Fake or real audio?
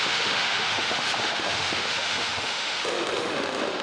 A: fake